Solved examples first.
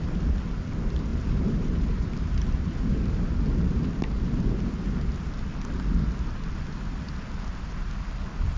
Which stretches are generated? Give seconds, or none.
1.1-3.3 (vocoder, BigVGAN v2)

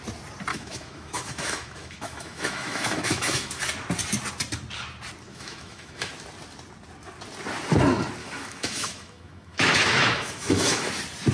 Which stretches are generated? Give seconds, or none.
0.5-3.6 (autoencoder, DAC-VAE); 5.3-6.1; 8.2-10.9

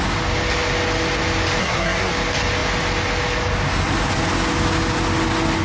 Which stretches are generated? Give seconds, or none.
1.6-2.1 (codec, SNAC)

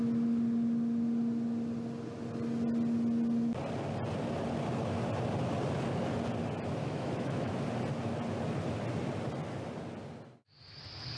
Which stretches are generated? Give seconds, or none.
6.8-7.5 (autoencoder, DAC-VAE)

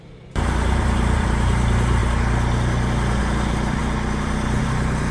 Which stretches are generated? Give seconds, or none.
0.0-2.0 (vocoder, BigVGAN v2); 3.2-3.8; 4.6-5.1

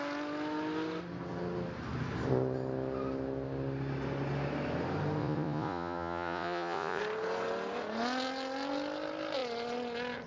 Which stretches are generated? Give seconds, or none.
5.2-7.0 (vocoder, Vocos)

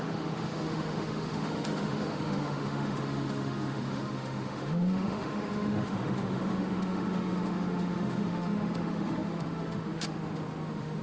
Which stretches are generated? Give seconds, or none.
0.0-11.0 (autoencoder, DAC-VAE)

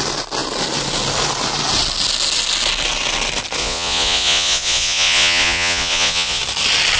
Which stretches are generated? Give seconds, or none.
3.6-6.4 (vocoder, Vocos)